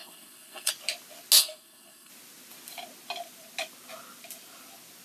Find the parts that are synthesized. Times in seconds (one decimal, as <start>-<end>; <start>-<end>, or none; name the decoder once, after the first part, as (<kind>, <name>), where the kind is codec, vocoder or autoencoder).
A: 0.0-0.7 (codec, SNAC); 1.4-2.1